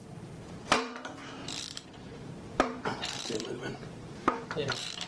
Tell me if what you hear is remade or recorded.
remade